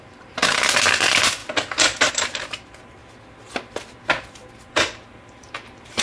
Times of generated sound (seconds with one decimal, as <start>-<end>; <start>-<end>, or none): 0.0-1.4; 2.1-3.0; 4.5-6.0